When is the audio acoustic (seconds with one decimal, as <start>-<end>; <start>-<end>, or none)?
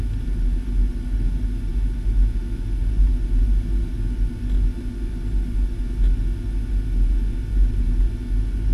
0.0-8.7